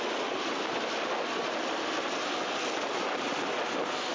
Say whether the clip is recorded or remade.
recorded